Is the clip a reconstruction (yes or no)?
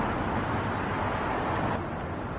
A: no